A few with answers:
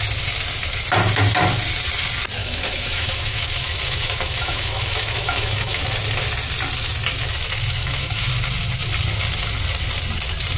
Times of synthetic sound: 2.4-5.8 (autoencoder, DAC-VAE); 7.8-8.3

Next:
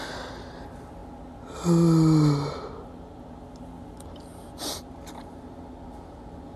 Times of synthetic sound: none

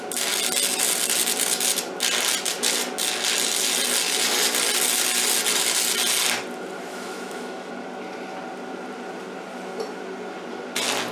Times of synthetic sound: 6.9-7.7 (autoencoder, DAC-VAE)

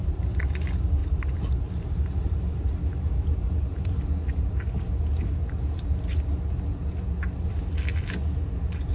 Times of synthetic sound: 0.0-0.5 (vocoder, BigVGAN v2); 1.0-4.9

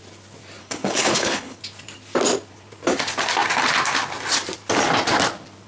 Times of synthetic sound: 0.6-1.6 (codec, HILCodec)

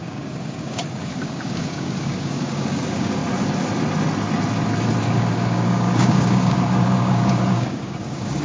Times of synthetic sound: 0.0-3.2 (codec, DAC); 5.0-8.4

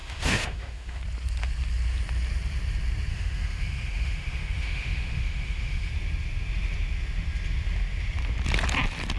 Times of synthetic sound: 0.0-1.0 (autoencoder, DAC-VAE); 3.1-5.9